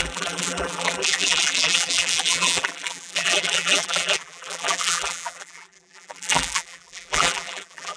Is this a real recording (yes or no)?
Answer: no